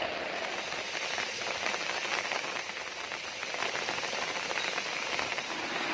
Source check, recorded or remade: recorded